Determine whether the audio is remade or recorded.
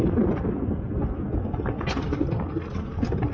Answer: recorded